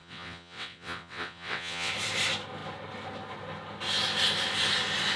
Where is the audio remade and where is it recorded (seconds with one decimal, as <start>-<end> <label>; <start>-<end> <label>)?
0.0-1.9 remade; 1.9-5.2 recorded